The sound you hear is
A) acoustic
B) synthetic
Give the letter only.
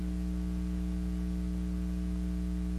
A